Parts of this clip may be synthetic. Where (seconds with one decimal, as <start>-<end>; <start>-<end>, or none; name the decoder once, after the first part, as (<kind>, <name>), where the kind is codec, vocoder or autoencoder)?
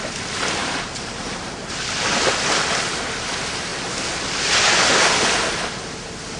0.6-1.7 (vocoder, BigVGAN v2)